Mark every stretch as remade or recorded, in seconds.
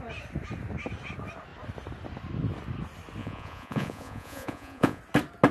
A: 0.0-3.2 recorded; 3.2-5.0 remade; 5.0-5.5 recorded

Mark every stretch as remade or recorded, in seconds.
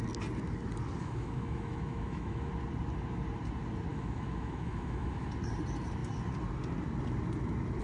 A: 0.0-1.0 recorded; 1.0-2.5 remade; 2.5-3.9 recorded; 3.9-5.3 remade; 5.3-7.8 recorded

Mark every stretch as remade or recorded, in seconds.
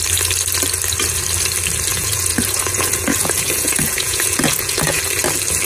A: 0.0-1.9 recorded; 1.9-5.0 remade; 5.0-5.6 recorded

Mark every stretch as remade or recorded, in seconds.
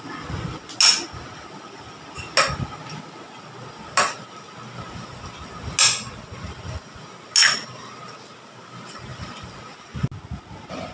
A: 0.0-10.9 recorded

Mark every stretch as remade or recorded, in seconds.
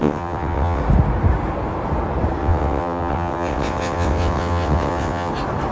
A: 0.0-0.8 remade; 0.8-2.4 recorded; 2.4-5.3 remade; 5.3-5.7 recorded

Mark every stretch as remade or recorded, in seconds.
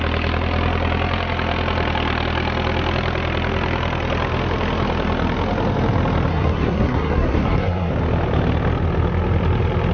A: 0.0-6.3 recorded; 6.3-7.9 remade; 7.9-9.9 recorded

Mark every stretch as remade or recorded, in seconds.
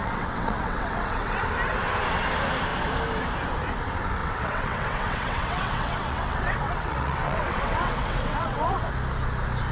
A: 0.0-1.4 remade; 1.4-4.2 recorded; 4.2-8.9 remade; 8.9-9.7 recorded